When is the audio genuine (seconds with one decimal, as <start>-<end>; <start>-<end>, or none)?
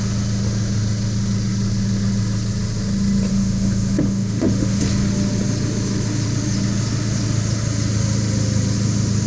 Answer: 0.0-3.3; 4.8-9.3